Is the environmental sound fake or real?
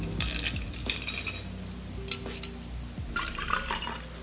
real